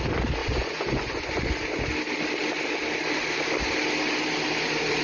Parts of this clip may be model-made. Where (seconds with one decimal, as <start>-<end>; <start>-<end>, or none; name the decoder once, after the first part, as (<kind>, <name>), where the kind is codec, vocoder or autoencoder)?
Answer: 0.4-1.3 (vocoder, Vocos)